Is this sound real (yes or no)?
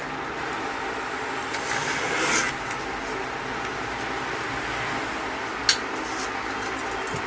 yes